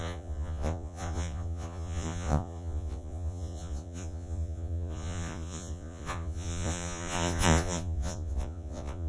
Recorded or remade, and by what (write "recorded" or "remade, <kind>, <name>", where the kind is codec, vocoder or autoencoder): remade, vocoder, Vocos